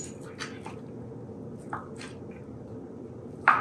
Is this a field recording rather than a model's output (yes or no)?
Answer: yes